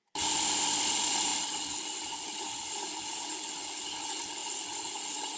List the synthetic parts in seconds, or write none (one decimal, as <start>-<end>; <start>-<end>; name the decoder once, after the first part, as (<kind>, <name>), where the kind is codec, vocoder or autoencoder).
none